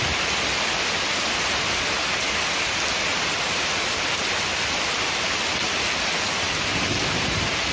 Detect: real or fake real